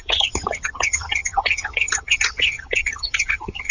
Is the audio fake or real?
fake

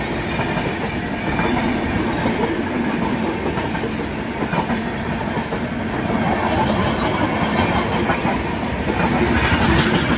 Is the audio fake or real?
real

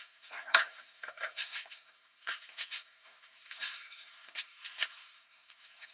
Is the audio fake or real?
fake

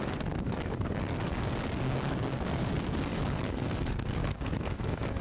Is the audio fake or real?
fake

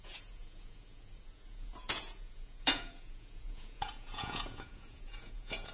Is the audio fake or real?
fake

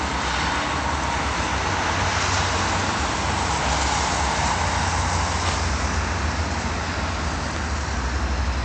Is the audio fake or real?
real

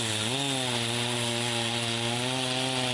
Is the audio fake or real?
real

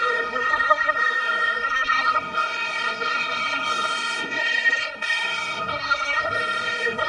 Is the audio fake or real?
fake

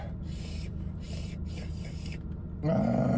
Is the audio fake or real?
real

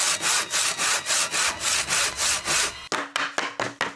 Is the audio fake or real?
real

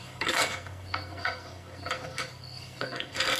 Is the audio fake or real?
fake